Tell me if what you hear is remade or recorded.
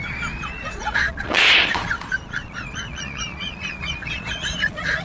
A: remade